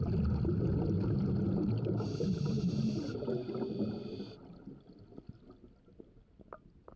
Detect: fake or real real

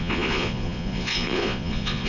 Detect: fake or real fake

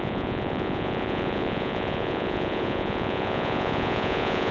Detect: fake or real fake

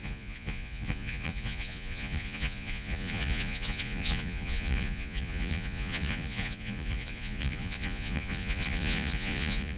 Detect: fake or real fake